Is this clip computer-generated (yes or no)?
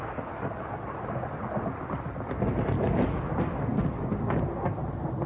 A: no